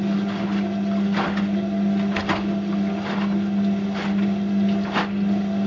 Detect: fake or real real